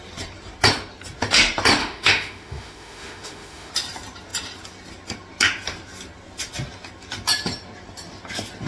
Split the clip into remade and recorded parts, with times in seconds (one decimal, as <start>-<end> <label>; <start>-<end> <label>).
0.0-1.8 recorded; 1.8-3.7 remade; 3.7-8.7 recorded

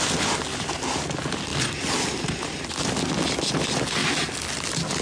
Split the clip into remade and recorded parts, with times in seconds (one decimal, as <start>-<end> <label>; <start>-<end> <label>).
0.0-5.0 recorded

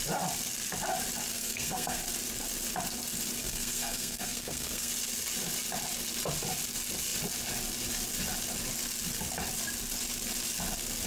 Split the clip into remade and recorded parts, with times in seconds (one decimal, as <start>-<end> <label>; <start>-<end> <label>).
0.0-1.3 recorded; 1.3-2.0 remade; 2.0-3.4 recorded; 3.4-4.9 remade; 4.9-11.1 recorded

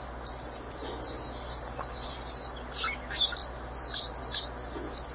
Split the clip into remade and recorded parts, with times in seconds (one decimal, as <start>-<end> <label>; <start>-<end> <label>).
0.0-5.1 recorded